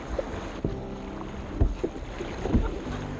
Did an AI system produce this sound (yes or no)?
no